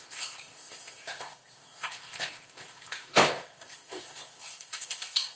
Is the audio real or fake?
fake